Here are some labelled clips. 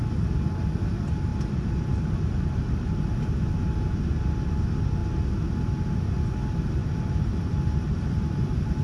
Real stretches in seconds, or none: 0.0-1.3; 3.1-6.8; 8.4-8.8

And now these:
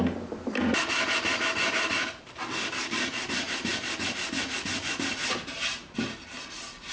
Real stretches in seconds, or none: 0.0-6.9

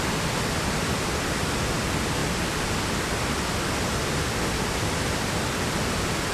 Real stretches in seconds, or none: 0.0-6.3

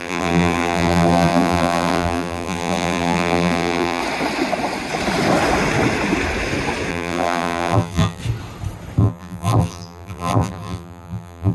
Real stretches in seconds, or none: 4.0-6.9; 8.2-9.0

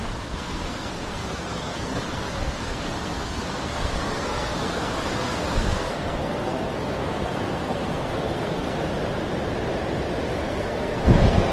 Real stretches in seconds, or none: 8.9-10.3

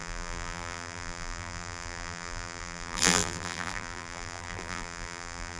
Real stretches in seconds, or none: none